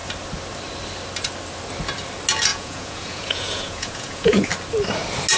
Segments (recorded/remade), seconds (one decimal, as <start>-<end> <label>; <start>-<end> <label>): 0.0-2.5 recorded; 2.5-4.5 remade; 4.5-5.4 recorded